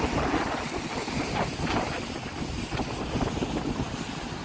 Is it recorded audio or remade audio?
recorded